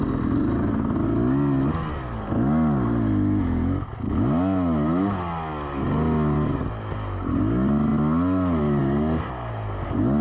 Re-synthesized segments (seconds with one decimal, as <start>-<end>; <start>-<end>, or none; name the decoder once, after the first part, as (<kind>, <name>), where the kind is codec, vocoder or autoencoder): none